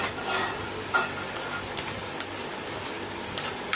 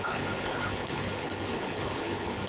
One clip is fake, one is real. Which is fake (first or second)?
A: second